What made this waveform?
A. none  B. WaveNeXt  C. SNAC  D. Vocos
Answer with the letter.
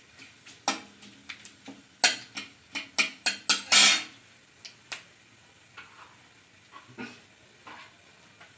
A